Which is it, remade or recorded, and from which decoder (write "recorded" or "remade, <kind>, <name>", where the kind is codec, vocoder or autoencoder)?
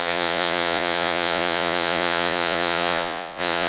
remade, vocoder, Vocos